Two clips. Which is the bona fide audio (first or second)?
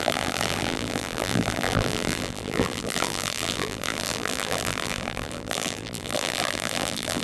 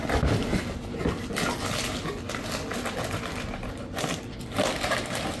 second